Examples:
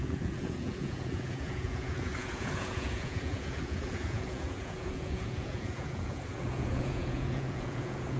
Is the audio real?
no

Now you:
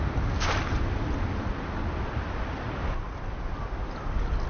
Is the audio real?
yes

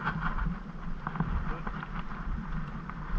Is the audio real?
yes